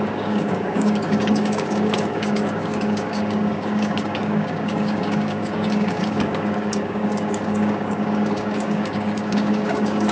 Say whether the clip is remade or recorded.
remade